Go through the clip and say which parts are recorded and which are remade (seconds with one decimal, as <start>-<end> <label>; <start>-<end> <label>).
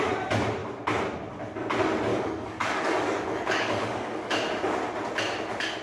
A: 0.0-2.1 recorded; 2.1-4.3 remade; 4.3-5.8 recorded